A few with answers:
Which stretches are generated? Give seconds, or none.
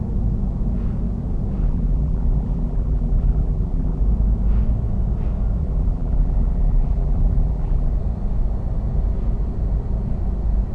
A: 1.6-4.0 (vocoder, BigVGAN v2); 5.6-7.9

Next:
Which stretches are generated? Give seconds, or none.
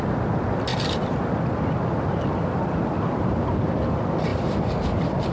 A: 4.3-5.3 (vocoder, BigVGAN v2)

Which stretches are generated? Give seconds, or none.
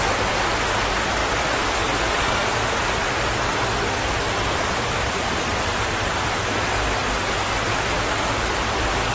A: 2.4-7.0 (vocoder, BigVGAN v2)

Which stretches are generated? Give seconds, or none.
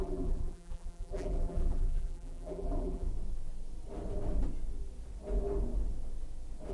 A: 0.0-3.1 (vocoder, BigVGAN v2)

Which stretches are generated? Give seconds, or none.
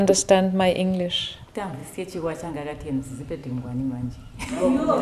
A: 1.8-2.5 (vocoder, BigVGAN v2); 3.4-5.0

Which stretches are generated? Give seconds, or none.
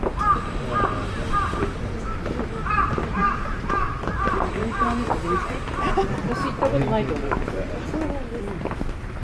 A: 3.2-3.9 (vocoder, BigVGAN v2)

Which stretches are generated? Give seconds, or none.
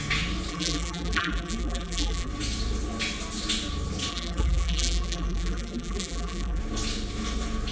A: 0.5-2.3 (vocoder, BigVGAN v2); 4.1-6.6